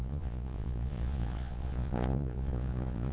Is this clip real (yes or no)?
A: no